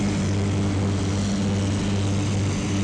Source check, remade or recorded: recorded